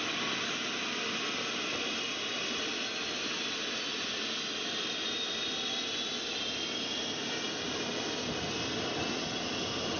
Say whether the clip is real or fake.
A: real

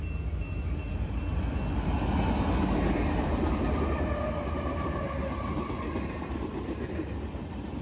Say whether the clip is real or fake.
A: real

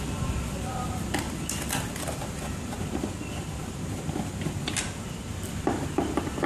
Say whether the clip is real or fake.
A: fake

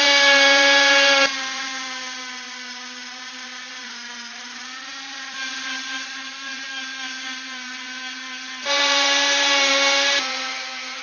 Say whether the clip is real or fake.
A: fake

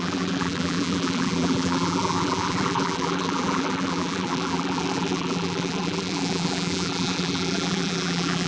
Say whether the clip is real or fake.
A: fake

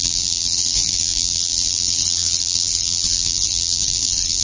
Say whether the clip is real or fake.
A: fake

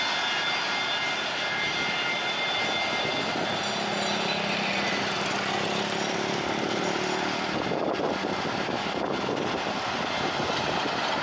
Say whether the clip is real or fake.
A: real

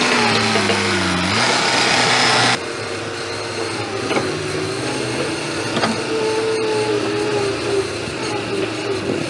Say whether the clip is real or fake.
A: real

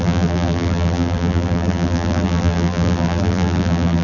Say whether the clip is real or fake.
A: fake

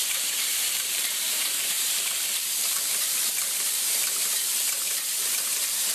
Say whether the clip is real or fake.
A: fake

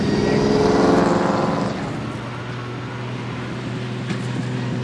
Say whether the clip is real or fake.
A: real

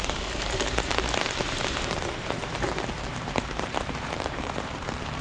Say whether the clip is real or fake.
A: fake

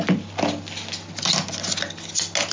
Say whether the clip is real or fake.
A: real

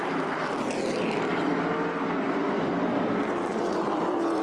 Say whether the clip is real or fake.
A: fake